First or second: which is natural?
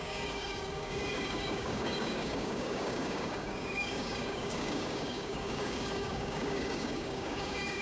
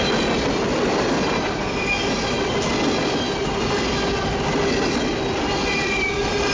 second